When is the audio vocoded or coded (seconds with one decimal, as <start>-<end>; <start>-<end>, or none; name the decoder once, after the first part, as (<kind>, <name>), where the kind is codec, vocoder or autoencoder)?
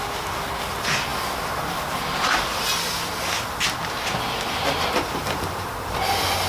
none